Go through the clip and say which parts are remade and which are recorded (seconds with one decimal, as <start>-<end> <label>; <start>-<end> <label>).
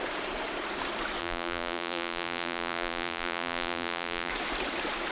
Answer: 0.0-1.2 recorded; 1.2-4.3 remade; 4.3-5.1 recorded